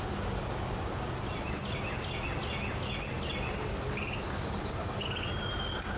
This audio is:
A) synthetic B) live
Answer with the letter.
B